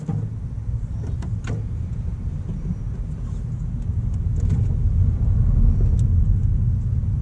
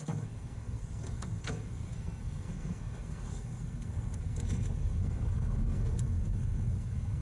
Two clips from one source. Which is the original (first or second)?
first